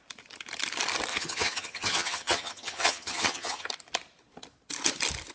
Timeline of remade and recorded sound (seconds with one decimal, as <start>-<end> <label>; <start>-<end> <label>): 0.0-1.1 recorded; 1.1-3.7 remade; 3.7-5.3 recorded